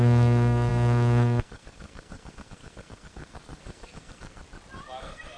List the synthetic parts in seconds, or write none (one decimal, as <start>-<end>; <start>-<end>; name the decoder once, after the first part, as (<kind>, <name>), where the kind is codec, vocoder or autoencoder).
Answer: 0.0-4.4 (codec, SNAC); 5.0-5.4